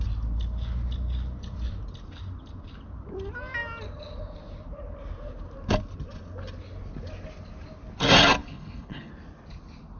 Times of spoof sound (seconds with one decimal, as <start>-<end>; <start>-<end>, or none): 8.4-9.1